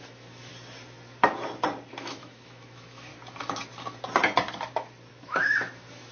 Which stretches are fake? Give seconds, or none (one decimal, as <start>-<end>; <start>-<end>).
0.0-0.5; 1.9-3.1; 5.1-6.1